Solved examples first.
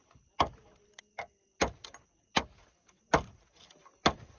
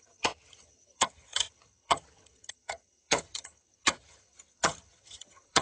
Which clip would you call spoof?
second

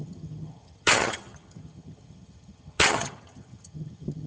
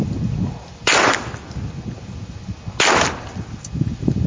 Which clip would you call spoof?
first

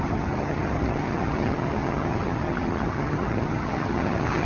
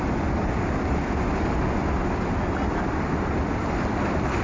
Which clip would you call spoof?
first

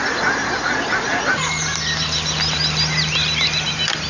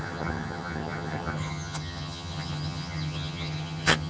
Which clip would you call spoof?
second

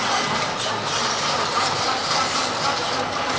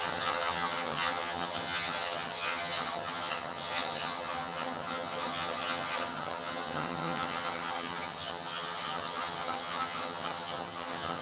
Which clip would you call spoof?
second